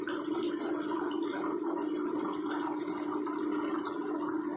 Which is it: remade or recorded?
recorded